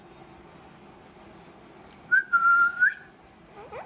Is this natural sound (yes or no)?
yes